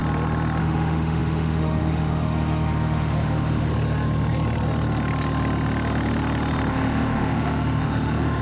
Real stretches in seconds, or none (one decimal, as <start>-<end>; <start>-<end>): 0.0-0.6; 3.7-6.7